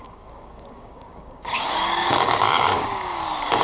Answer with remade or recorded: remade